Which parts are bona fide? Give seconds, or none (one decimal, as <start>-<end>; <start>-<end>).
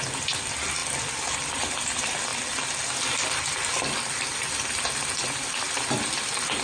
0.0-6.6